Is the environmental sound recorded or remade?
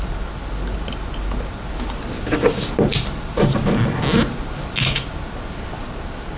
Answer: recorded